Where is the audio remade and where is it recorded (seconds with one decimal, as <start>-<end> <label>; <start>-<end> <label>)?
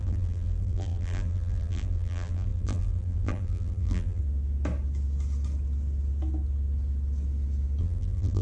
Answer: 0.0-4.2 remade; 4.2-7.8 recorded; 7.8-8.4 remade